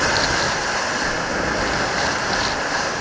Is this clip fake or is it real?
real